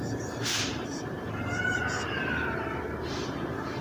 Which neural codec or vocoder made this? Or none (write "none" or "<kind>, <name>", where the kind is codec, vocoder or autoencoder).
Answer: vocoder, BigVGAN v2